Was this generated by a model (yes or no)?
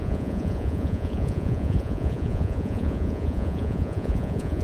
yes